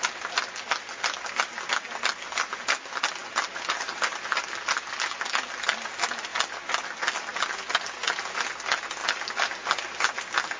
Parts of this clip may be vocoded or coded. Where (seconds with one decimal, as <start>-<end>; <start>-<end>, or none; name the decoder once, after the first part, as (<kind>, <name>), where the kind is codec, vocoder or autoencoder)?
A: 3.2-4.4 (vocoder, BigVGAN v2); 9.0-9.5